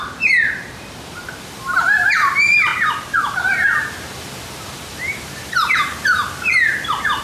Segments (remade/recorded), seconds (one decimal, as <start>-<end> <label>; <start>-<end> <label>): 0.0-2.7 remade; 2.7-3.2 recorded; 3.2-5.9 remade; 5.9-7.2 recorded